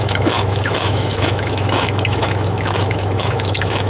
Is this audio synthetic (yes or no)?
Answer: yes